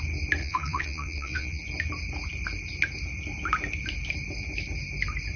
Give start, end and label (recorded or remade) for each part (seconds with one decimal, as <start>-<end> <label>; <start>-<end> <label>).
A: 0.0-0.4 recorded; 0.4-1.6 remade; 1.6-5.4 recorded